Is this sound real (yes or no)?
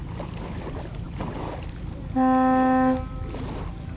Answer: yes